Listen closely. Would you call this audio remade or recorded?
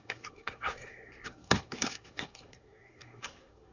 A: remade